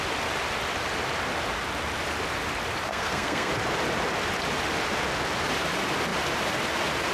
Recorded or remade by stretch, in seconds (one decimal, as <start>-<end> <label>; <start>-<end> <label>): 0.0-2.9 recorded; 2.9-3.5 remade; 3.5-7.1 recorded